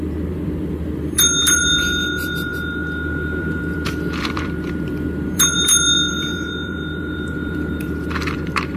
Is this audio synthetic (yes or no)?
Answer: yes